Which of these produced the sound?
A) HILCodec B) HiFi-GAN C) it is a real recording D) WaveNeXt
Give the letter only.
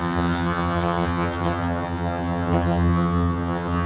B